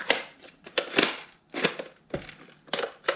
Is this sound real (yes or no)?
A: yes